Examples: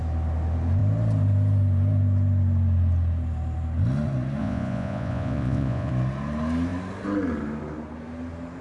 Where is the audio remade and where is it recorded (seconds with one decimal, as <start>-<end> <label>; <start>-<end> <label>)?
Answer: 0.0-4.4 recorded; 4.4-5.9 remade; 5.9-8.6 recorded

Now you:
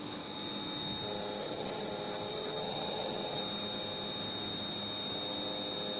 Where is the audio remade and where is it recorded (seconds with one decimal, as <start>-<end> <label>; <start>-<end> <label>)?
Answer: 0.0-1.4 recorded; 1.4-1.9 remade; 1.9-2.3 recorded; 2.3-3.4 remade; 3.4-6.0 recorded

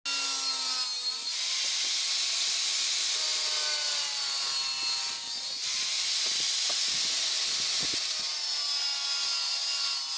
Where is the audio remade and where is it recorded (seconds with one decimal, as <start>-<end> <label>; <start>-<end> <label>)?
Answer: 0.0-10.2 recorded

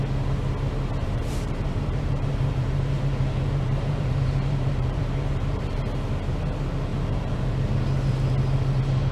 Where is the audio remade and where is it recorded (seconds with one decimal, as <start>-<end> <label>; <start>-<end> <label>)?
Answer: 0.0-1.0 recorded; 1.0-5.8 remade; 5.8-6.9 recorded; 6.9-7.5 remade; 7.5-9.1 recorded